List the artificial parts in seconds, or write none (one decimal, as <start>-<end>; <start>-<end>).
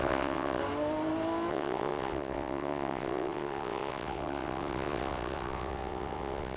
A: 0.0-0.6; 1.5-6.6